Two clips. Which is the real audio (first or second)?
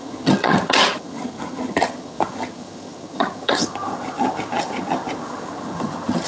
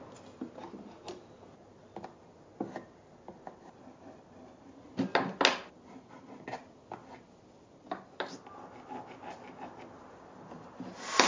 second